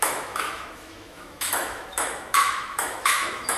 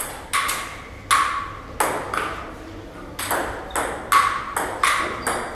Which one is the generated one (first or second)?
first